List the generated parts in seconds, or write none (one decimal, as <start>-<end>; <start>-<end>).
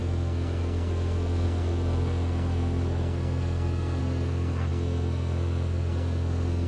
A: 0.0-6.7